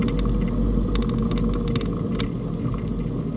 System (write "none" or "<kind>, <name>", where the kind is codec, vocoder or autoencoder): none